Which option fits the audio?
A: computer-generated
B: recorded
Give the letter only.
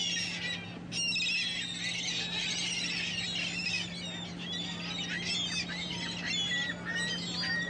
B